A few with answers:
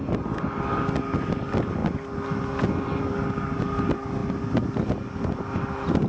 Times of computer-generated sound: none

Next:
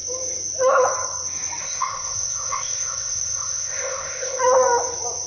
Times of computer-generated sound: 1.6-4.4 (codec, ZipCodec)

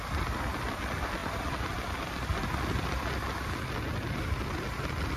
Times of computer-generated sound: none

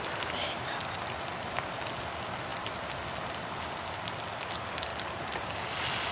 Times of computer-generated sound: none

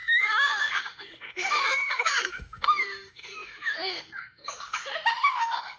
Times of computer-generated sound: 0.0-5.8 (autoencoder, DAC-VAE)

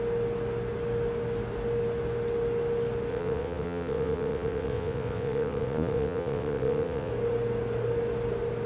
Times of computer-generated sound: 3.1-7.1 (vocoder, WaveNeXt)

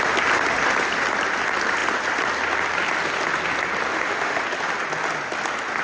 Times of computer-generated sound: 3.9-4.4 (autoencoder, DAC-VAE)